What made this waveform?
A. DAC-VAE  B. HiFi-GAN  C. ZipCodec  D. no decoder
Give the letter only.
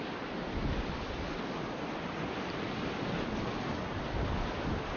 D